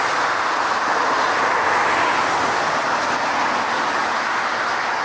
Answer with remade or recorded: recorded